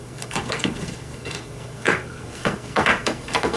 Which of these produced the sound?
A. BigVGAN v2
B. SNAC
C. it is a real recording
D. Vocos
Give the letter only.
B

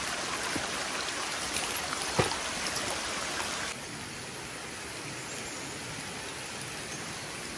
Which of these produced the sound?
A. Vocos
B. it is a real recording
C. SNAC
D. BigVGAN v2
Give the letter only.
B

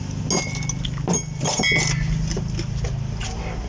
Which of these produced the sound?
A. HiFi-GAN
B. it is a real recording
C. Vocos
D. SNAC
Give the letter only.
B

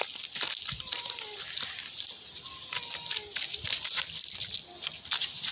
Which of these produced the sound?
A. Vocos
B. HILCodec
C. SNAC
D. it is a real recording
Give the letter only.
D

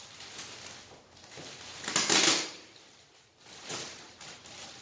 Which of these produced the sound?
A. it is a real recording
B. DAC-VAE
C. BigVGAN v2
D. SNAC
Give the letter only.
A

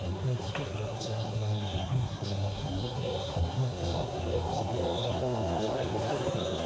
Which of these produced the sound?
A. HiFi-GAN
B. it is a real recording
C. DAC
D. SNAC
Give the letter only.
D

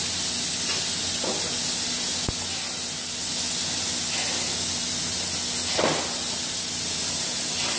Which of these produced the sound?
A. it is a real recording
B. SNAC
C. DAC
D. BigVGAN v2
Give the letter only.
A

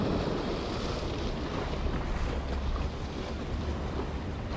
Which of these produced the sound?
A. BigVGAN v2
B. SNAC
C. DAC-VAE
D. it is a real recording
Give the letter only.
D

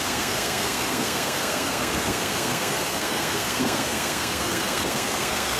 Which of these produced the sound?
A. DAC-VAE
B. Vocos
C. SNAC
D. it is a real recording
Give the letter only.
C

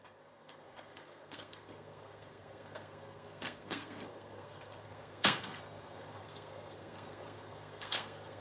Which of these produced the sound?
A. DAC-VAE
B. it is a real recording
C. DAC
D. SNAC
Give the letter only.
D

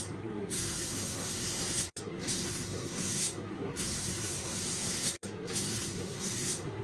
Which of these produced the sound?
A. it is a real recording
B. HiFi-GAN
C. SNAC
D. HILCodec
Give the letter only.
C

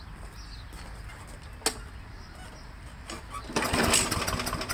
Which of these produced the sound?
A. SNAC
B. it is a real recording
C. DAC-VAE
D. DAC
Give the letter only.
B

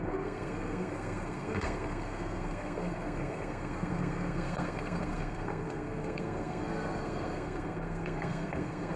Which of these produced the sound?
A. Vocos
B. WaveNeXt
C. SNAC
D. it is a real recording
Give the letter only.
C